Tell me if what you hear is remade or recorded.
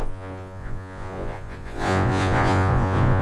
remade